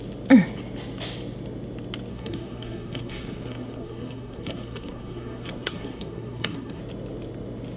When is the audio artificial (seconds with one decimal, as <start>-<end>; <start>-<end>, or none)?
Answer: 2.1-6.8